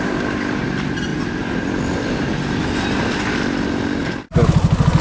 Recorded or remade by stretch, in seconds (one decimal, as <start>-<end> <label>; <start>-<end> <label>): 0.0-5.0 recorded